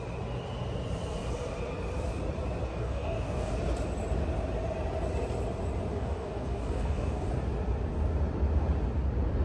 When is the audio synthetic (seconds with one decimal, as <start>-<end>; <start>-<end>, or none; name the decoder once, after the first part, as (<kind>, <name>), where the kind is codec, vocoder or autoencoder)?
2.7-3.5 (codec, DAC); 5.9-7.3